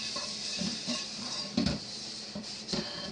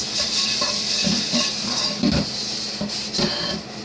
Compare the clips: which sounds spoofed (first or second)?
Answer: first